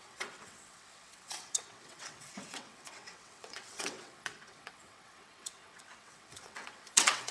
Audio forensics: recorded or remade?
remade